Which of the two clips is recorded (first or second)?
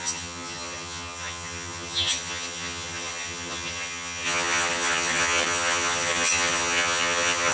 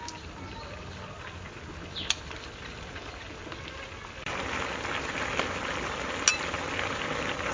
second